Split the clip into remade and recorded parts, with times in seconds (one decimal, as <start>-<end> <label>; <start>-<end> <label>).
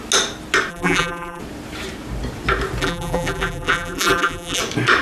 0.0-0.7 recorded; 0.7-1.4 remade; 1.4-2.8 recorded; 2.8-4.6 remade; 4.6-5.0 recorded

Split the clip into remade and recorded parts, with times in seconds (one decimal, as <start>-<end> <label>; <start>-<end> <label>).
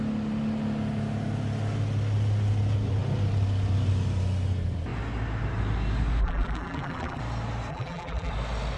0.0-6.2 recorded; 6.2-7.2 remade; 7.2-7.7 recorded; 7.7-8.3 remade; 8.3-8.8 recorded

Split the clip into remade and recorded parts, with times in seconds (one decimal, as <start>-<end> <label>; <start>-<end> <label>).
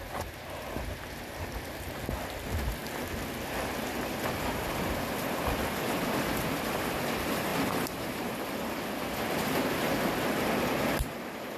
0.0-7.5 recorded; 7.5-8.5 remade; 8.5-11.6 recorded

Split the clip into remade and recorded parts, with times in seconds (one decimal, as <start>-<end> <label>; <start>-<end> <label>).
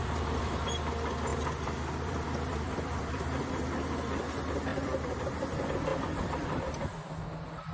0.0-0.9 remade; 0.9-1.3 recorded; 1.3-3.6 remade; 3.6-4.7 recorded; 4.7-5.2 remade; 5.2-5.9 recorded; 5.9-7.2 remade; 7.2-7.7 recorded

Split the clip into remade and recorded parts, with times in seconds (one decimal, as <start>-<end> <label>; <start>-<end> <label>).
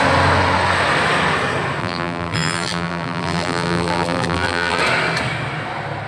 0.0-1.8 recorded; 1.8-4.8 remade; 4.8-6.1 recorded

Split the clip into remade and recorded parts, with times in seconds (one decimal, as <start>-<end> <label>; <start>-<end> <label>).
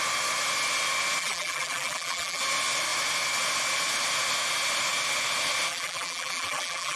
0.0-1.2 recorded; 1.2-2.4 remade; 2.4-5.7 recorded; 5.7-7.0 remade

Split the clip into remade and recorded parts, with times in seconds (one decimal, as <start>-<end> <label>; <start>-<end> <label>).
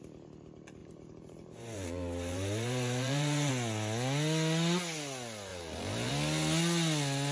0.0-0.8 recorded; 0.8-3.5 remade; 3.5-5.5 recorded; 5.5-6.1 remade; 6.1-7.3 recorded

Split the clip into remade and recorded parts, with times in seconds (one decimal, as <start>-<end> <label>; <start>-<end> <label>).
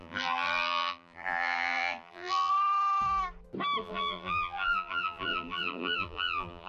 0.0-2.5 remade; 2.5-3.8 recorded; 3.8-6.7 remade